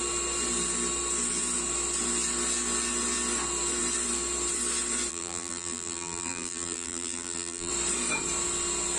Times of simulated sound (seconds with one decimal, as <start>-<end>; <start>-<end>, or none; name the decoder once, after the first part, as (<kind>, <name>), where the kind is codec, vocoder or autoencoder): 5.1-7.7 (vocoder, BigVGAN v2)